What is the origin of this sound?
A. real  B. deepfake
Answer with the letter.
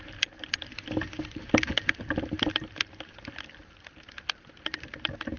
A